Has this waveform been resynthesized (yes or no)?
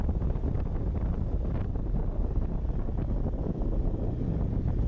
no